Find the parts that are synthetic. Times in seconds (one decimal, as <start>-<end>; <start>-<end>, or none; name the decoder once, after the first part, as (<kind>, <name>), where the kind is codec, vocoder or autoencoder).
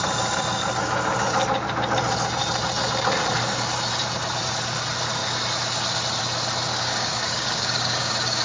6.7-8.4 (codec, DAC)